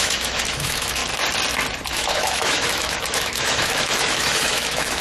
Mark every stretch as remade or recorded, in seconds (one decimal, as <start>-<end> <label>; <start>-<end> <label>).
0.0-1.0 remade; 1.0-1.9 recorded; 1.9-5.0 remade